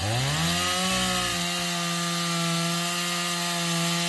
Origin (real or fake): real